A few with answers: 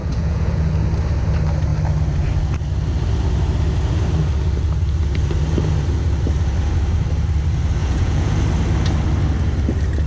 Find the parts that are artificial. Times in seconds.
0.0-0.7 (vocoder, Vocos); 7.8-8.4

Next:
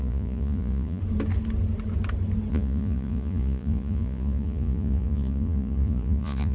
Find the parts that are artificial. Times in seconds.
0.0-1.0 (vocoder, Vocos); 2.5-6.5

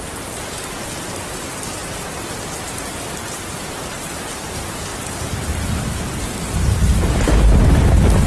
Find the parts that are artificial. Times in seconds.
none

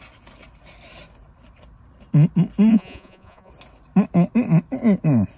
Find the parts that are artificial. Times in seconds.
2.7-3.5 (vocoder, Vocos)

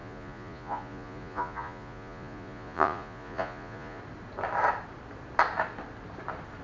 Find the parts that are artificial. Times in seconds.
0.0-4.0 (vocoder, Vocos)

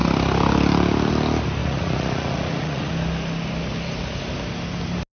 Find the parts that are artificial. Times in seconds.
1.6-2.9 (vocoder, Vocos)